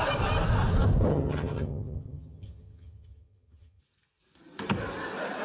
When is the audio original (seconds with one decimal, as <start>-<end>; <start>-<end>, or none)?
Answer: 0.0-1.1; 3.8-5.4